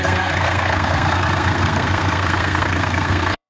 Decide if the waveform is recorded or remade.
remade